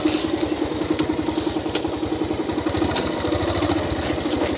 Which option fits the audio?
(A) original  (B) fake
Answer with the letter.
A